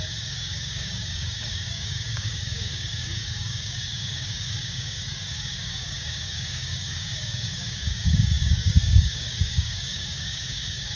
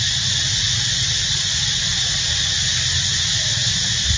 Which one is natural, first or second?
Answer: second